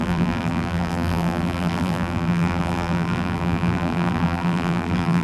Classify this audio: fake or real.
fake